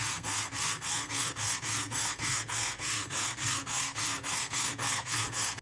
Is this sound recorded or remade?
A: remade